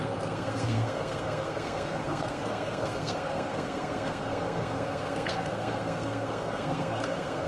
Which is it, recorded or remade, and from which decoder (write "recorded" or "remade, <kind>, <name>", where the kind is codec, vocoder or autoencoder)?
remade, codec, SNAC